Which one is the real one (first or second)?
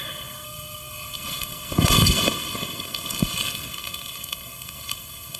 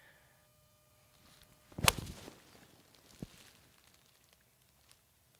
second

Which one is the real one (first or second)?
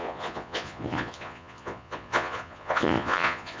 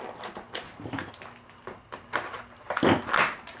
second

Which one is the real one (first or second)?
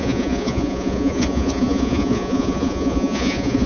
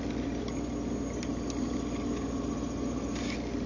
second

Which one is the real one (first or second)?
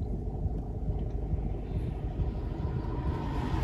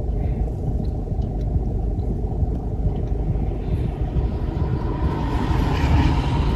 first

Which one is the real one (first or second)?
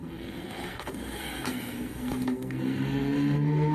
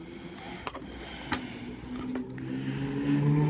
second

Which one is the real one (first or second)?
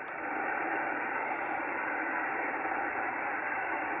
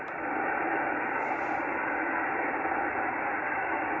second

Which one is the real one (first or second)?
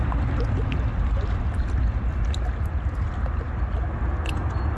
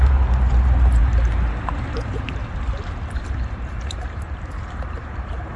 first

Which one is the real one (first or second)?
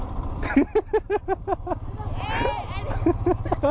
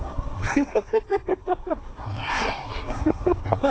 first